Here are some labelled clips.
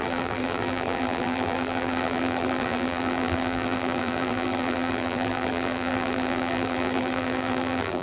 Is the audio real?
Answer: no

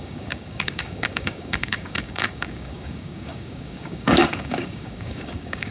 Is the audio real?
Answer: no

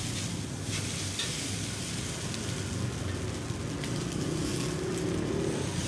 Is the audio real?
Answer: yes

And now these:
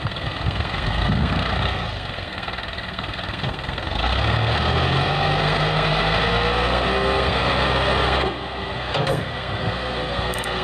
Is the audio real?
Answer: no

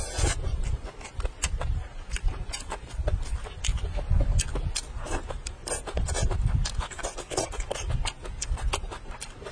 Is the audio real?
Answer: yes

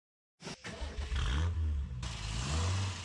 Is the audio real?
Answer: yes